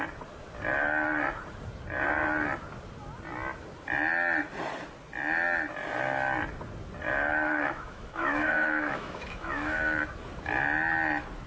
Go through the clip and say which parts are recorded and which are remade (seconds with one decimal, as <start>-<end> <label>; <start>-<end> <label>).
0.0-7.3 recorded; 7.3-10.0 remade; 10.0-11.5 recorded